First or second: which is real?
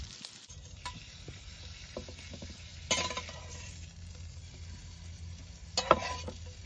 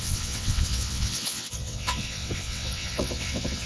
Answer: first